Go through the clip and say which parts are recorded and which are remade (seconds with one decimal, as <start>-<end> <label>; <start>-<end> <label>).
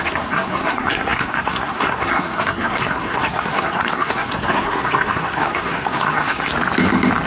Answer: 0.0-6.5 remade; 6.5-7.3 recorded